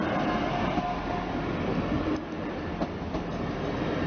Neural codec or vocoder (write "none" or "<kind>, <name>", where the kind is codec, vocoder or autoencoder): none